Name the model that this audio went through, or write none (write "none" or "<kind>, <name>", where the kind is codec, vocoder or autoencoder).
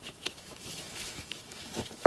autoencoder, DAC-VAE